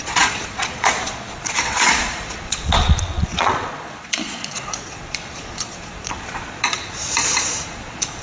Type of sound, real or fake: fake